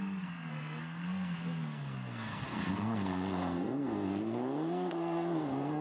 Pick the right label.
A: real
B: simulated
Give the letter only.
B